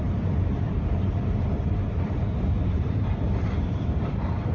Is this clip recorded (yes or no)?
no